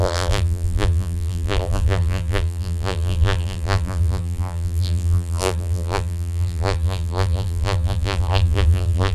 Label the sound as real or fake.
fake